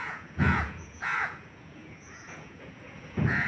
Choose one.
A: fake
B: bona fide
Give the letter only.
A